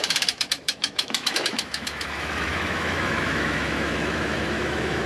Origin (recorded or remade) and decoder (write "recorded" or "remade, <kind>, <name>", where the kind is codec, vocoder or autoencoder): remade, autoencoder, DAC-VAE